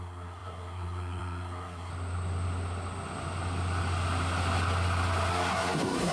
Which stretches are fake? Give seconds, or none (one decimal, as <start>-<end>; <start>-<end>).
0.0-1.9; 5.3-6.1